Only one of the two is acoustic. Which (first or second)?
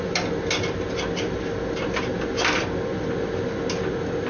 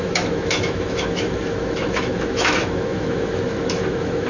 first